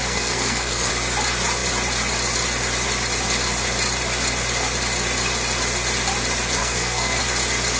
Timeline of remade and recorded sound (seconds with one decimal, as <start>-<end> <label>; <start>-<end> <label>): 0.0-0.9 remade; 0.9-6.6 recorded; 6.6-7.2 remade; 7.2-7.8 recorded